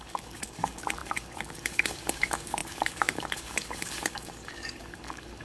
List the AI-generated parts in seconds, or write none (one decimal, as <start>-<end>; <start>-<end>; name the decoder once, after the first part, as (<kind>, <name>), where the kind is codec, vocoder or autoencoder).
0.0-5.4 (codec, DAC)